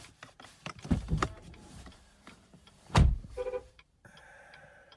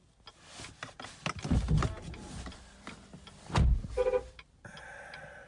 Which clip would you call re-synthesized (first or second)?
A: first